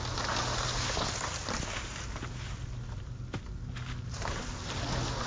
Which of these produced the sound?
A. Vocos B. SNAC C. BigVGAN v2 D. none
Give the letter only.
D